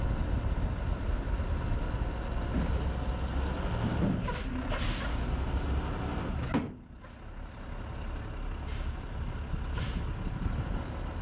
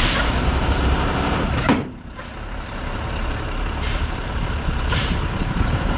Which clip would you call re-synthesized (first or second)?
second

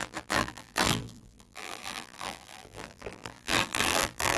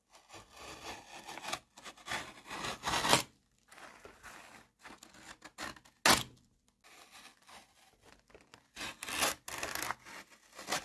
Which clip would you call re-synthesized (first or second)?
first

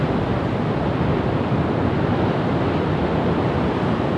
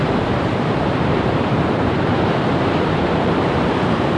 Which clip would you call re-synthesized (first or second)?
second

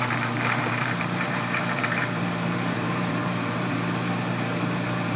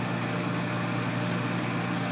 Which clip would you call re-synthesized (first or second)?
first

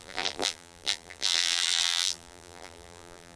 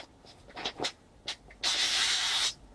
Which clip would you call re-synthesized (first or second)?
first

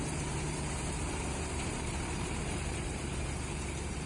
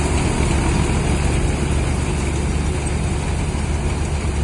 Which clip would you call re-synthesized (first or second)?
first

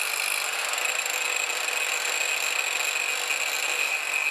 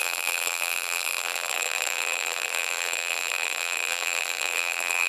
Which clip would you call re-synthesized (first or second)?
second